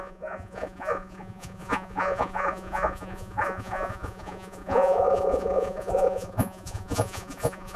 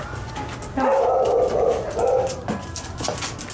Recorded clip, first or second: second